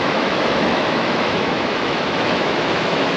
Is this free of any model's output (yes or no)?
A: no